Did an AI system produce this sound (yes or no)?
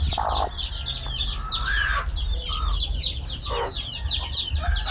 no